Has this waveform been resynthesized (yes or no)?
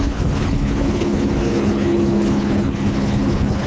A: yes